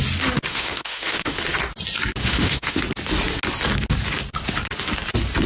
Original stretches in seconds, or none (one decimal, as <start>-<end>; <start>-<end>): 0.0-0.5; 1.4-2.2; 2.8-5.5

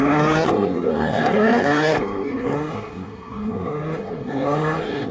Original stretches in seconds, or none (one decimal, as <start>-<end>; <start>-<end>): none

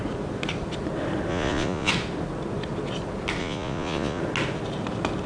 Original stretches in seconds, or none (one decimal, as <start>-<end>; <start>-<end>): 0.0-1.3; 1.9-3.4; 4.2-5.3

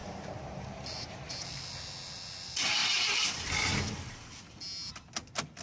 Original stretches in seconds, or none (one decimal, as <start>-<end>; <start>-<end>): 1.3-5.6

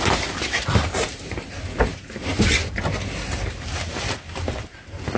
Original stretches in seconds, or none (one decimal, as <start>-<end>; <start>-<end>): 0.0-5.2

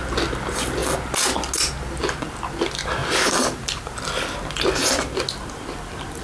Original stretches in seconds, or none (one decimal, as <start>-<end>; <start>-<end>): 0.0-3.0; 4.0-6.2